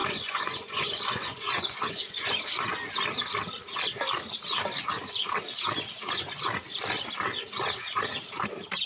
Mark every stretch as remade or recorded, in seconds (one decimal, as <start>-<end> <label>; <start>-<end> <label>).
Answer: 0.0-2.4 remade; 2.4-8.9 recorded